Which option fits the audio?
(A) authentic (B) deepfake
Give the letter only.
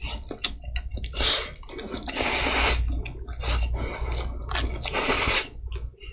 A